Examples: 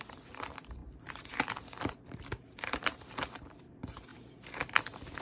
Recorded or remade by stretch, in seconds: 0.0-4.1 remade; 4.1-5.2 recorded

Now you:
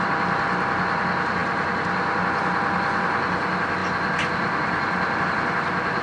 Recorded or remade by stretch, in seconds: 0.0-6.0 recorded